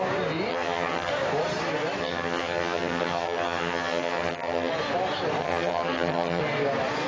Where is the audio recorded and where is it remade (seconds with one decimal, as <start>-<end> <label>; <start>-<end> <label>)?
0.0-0.5 recorded; 0.5-1.1 remade; 1.1-2.0 recorded; 2.0-4.7 remade; 4.7-5.4 recorded; 5.4-6.4 remade; 6.4-7.1 recorded